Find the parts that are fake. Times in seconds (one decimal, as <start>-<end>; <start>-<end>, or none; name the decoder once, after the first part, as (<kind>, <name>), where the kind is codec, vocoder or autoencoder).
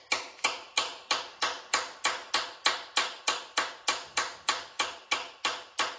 none